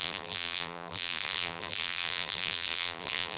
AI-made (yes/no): yes